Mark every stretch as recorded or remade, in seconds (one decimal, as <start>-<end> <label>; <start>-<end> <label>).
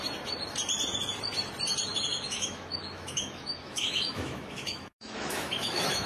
0.0-2.1 recorded; 2.1-6.1 remade